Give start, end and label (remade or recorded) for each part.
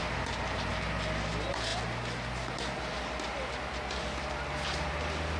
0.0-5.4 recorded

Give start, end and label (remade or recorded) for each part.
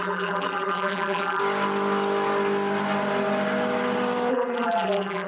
0.0-1.4 remade; 1.4-4.3 recorded; 4.3-5.3 remade